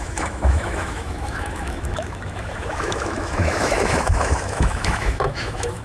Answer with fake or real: fake